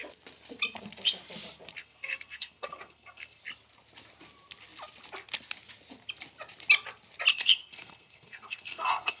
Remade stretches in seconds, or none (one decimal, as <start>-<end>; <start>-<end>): 1.8-3.4; 7.3-9.2

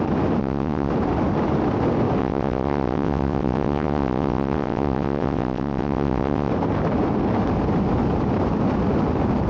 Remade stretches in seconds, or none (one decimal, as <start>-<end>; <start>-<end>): 0.4-0.9; 2.2-6.5

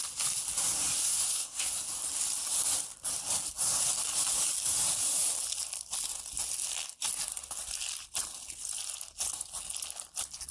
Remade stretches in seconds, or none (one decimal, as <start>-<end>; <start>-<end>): 1.0-1.8

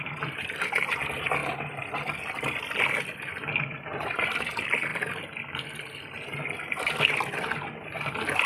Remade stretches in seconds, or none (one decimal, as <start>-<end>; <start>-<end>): none

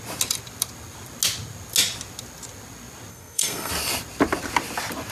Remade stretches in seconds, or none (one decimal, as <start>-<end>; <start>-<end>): 3.1-3.7